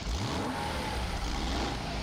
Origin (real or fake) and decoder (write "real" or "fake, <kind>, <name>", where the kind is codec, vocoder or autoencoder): real